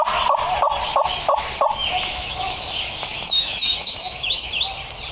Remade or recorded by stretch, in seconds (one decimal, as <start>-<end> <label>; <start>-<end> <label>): 0.0-1.8 recorded; 1.8-4.5 remade; 4.5-5.1 recorded